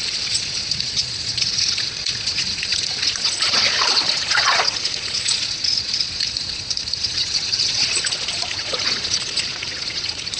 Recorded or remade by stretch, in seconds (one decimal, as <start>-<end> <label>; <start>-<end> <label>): 0.0-10.4 remade